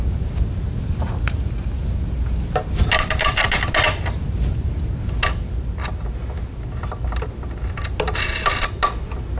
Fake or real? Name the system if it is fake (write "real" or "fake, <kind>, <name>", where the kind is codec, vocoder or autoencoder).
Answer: real